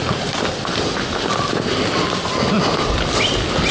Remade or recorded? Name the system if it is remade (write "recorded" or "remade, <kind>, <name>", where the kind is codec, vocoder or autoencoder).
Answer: recorded